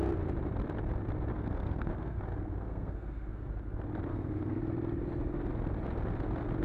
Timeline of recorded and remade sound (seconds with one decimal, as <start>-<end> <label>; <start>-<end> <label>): 0.0-1.3 recorded; 1.3-3.5 remade; 3.5-4.1 recorded; 4.1-4.6 remade; 4.6-6.6 recorded